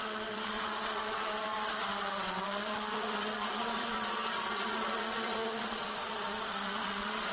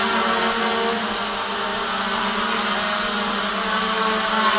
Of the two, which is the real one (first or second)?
second